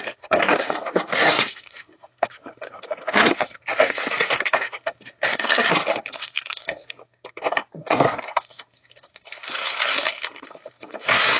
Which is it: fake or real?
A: fake